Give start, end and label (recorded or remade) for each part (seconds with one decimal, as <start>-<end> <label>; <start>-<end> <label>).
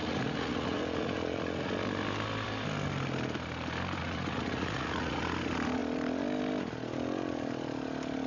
0.0-1.7 remade; 1.7-4.0 recorded; 4.0-5.2 remade; 5.2-8.3 recorded